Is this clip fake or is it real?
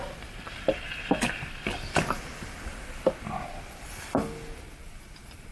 real